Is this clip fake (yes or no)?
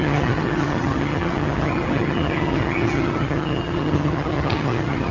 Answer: yes